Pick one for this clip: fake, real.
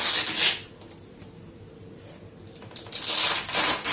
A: real